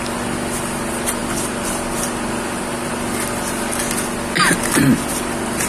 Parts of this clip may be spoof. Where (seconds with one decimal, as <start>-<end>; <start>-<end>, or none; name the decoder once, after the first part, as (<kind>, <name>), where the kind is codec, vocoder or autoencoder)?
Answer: none